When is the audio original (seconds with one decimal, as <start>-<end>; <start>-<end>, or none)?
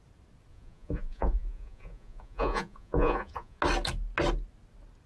0.0-0.5; 3.6-5.1